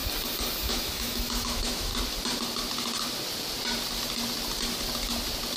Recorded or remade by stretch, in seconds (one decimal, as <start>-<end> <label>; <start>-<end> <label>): 0.0-0.7 recorded; 0.7-1.9 remade; 1.9-5.6 recorded